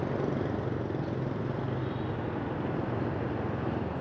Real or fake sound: real